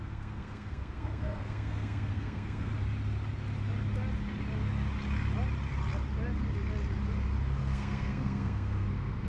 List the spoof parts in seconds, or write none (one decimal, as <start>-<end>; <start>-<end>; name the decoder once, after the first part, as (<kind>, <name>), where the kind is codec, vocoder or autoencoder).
0.0-2.7 (codec, SNAC); 7.6-9.3